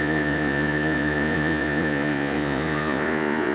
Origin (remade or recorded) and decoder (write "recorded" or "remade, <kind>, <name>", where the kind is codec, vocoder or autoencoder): remade, vocoder, Vocos